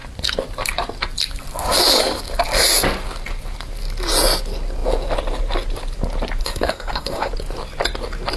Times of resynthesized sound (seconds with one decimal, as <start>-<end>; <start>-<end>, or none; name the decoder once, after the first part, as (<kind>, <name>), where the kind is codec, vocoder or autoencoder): 6.4-7.3 (codec, SNAC)